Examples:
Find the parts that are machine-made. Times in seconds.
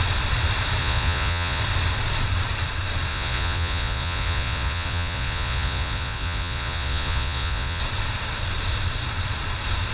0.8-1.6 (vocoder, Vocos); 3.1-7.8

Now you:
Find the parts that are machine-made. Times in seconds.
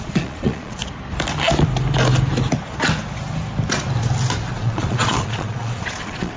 0.0-0.8 (vocoder, Vocos); 4.5-6.4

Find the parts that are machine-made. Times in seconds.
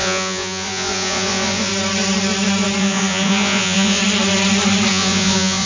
0.0-1.7 (vocoder, Vocos); 2.8-4.0; 4.9-5.7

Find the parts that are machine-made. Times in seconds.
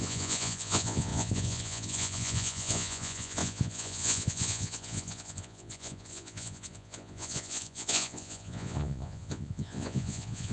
0.0-10.5 (vocoder, Vocos)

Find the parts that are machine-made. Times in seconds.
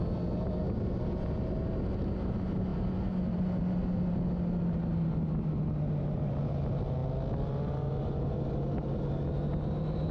none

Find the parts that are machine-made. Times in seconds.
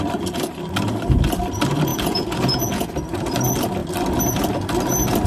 1.9-2.9 (vocoder, Vocos)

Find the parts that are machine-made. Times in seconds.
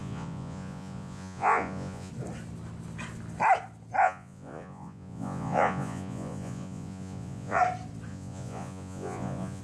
0.0-2.1 (vocoder, Vocos); 4.0-7.6; 8.1-9.6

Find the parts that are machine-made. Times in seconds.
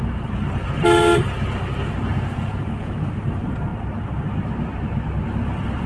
2.1-2.9 (vocoder, Vocos)